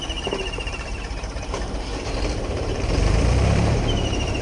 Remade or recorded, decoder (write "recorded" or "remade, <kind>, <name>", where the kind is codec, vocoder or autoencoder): remade, vocoder, BigVGAN v2